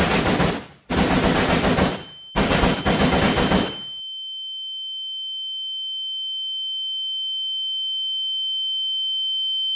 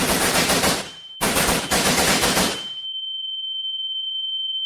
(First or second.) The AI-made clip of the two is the second